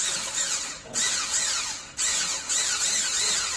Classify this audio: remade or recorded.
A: remade